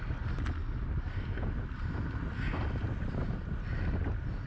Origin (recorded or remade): recorded